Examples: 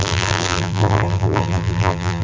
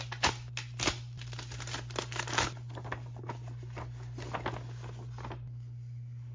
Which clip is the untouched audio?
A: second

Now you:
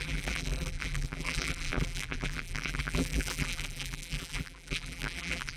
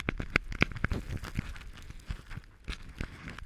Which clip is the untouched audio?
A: second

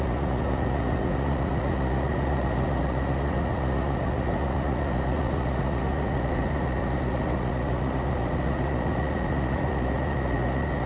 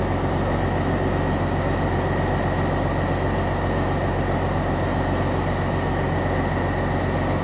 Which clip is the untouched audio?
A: second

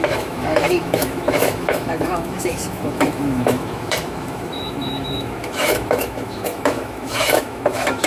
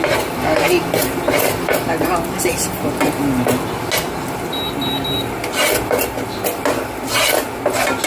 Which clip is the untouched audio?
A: second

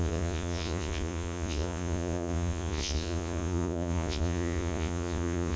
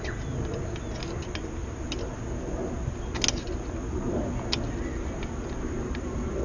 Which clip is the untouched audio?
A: second